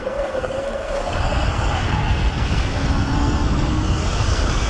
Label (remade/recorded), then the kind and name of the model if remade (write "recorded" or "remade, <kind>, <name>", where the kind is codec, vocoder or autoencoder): remade, codec, SNAC